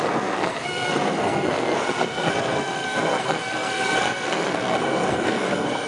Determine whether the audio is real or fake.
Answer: fake